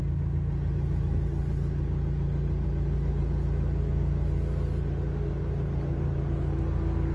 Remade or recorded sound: recorded